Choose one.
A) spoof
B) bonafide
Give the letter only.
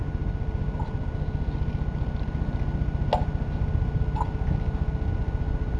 B